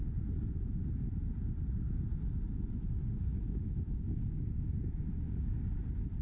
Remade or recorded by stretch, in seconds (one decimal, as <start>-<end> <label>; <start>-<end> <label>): 0.0-3.1 recorded; 3.1-5.6 remade; 5.6-6.2 recorded